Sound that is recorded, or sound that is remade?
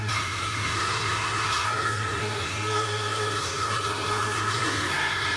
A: remade